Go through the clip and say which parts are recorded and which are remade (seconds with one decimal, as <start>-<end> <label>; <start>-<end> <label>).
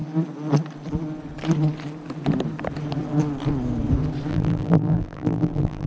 0.0-4.3 recorded; 4.3-5.9 remade